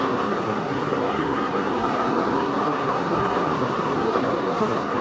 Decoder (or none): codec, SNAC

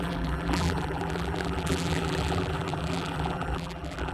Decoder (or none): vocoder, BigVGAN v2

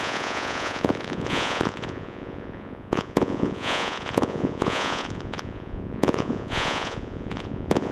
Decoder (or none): vocoder, Vocos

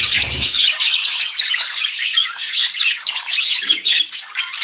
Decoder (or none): codec, DAC